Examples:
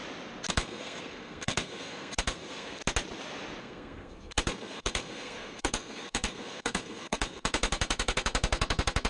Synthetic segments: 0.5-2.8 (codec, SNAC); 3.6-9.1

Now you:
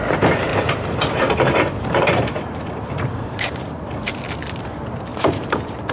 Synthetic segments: 0.5-4.0 (vocoder, BigVGAN v2); 5.1-5.9

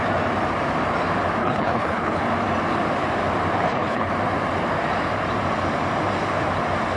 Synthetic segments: 1.4-2.2 (codec, HILCodec); 3.6-4.1

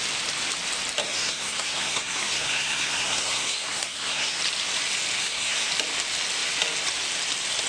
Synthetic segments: 1.0-4.4 (codec, SNAC); 5.2-5.7

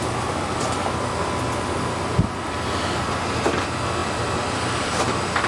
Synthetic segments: 4.0-5.5 (vocoder, BigVGAN v2)

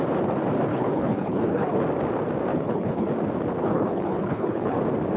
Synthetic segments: 0.7-1.8 (codec, HILCodec); 2.5-3.1; 3.6-4.8

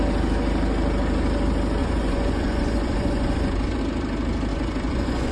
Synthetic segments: 1.8-3.8 (vocoder, Vocos); 4.5-5.3